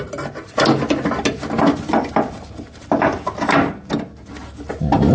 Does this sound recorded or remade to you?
recorded